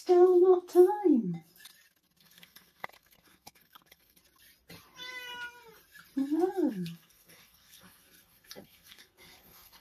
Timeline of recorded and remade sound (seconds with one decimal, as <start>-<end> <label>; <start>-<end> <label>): 0.0-0.5 remade; 0.5-2.2 recorded; 2.2-4.2 remade; 4.2-6.7 recorded; 6.7-9.8 remade